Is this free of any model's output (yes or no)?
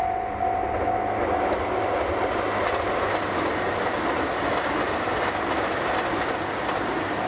yes